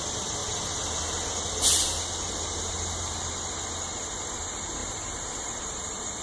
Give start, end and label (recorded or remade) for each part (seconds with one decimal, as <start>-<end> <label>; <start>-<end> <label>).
0.0-6.2 recorded